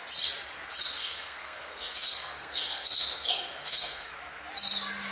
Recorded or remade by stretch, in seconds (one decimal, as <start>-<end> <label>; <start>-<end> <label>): 0.0-1.0 recorded; 1.0-4.1 remade; 4.1-5.1 recorded